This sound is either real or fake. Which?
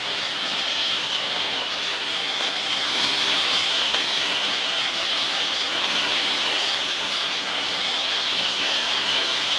fake